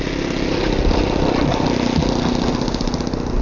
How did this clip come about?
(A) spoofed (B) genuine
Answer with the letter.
B